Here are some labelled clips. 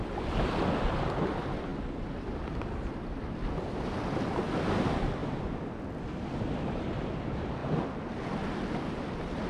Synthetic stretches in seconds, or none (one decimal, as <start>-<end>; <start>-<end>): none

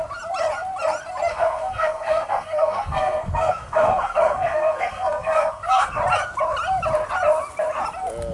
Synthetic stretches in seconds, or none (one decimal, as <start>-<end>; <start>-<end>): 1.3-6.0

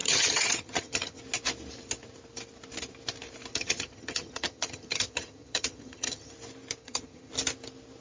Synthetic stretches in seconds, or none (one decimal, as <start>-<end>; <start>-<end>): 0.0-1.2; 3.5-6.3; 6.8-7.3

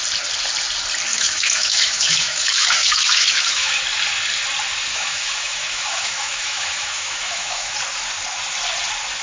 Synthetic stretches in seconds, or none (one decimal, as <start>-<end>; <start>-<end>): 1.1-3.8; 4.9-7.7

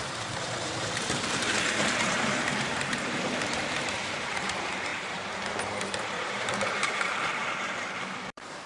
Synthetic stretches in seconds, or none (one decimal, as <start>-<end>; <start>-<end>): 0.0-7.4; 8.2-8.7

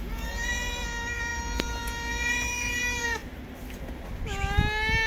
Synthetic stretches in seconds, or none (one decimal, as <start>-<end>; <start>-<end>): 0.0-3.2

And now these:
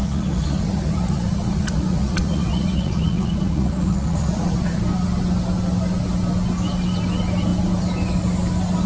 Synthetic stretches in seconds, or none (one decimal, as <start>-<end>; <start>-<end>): 0.0-4.8